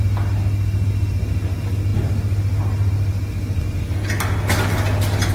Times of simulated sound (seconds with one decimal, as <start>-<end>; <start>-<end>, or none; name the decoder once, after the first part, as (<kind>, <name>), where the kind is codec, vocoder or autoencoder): none